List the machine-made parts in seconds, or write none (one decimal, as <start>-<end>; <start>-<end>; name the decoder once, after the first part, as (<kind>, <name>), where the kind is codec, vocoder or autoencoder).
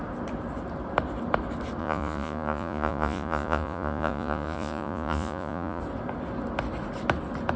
1.8-5.8 (vocoder, Vocos)